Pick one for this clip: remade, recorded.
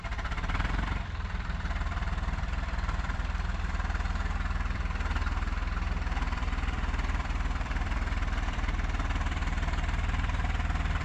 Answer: remade